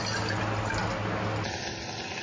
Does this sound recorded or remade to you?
recorded